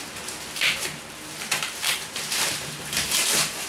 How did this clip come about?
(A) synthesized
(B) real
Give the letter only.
A